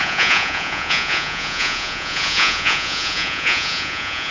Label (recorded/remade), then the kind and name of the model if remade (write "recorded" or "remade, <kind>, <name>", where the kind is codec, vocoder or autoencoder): remade, vocoder, Vocos